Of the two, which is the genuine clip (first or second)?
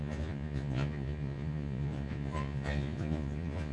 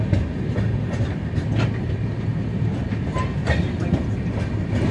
second